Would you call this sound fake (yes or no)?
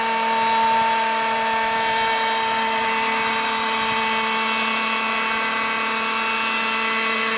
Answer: no